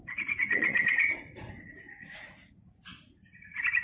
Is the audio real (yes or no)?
no